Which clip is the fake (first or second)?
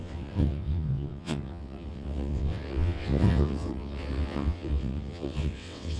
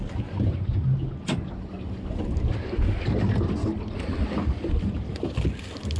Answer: first